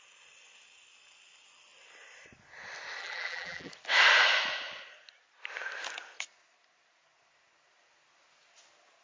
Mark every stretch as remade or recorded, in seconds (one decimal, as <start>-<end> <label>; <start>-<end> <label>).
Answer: 0.0-3.0 recorded; 3.0-3.7 remade; 3.7-9.0 recorded